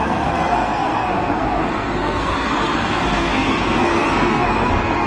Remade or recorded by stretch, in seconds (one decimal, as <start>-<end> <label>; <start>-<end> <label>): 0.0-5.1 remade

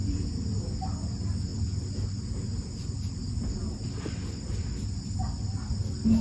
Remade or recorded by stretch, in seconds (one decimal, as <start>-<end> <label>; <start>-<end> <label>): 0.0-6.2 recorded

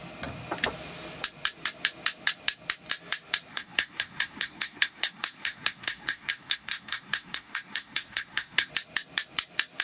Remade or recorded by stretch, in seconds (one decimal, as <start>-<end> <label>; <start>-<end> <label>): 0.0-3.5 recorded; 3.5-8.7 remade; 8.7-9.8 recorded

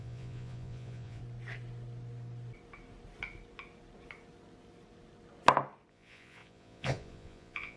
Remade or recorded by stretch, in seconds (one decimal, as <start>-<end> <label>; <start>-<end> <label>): 0.0-1.2 remade; 1.2-5.9 recorded; 5.9-7.8 remade

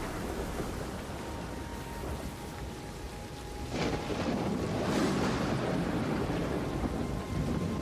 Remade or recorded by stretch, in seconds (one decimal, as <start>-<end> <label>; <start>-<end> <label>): 0.0-7.8 remade